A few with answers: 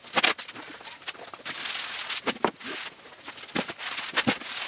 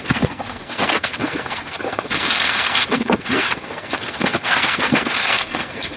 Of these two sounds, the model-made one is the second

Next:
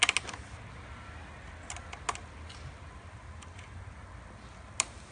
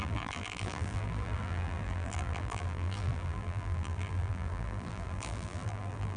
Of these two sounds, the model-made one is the second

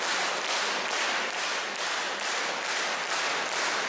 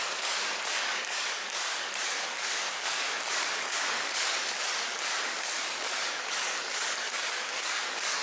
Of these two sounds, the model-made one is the second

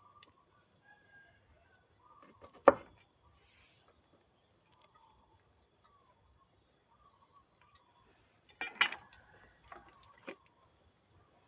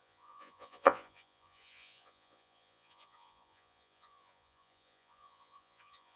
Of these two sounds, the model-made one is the second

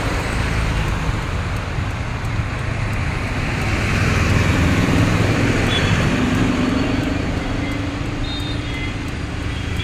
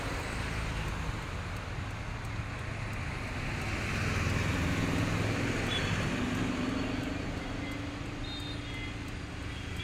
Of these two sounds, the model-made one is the first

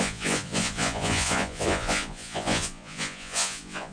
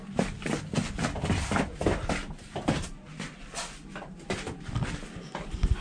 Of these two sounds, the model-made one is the first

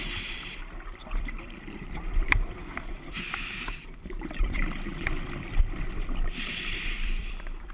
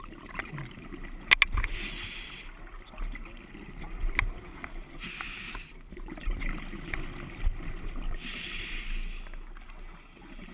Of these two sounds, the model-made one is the first